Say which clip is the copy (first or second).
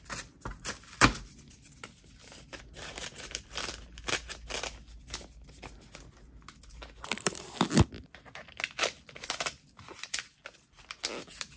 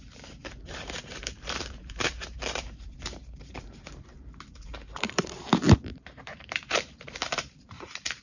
second